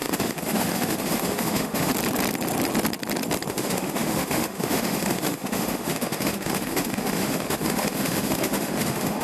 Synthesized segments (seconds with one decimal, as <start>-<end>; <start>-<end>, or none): 0.0-1.9; 3.5-9.2